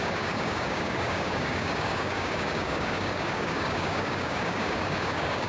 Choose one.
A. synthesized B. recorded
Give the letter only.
A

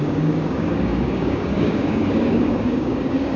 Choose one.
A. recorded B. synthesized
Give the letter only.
B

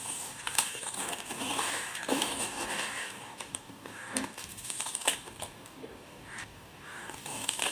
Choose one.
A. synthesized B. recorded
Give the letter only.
A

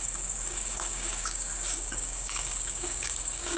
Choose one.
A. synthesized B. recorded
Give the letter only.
A